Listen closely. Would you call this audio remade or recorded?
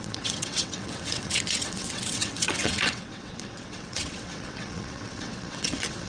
remade